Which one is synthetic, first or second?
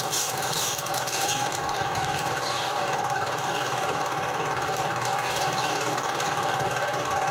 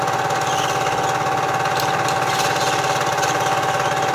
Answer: first